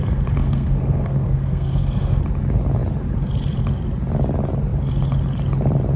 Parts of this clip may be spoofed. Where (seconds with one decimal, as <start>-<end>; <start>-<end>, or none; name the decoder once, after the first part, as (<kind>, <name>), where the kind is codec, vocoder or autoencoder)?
0.4-2.2 (codec, SNAC)